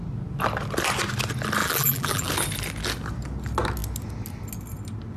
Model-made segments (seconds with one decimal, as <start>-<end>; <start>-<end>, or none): 1.6-2.3